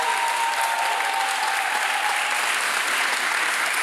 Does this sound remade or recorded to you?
recorded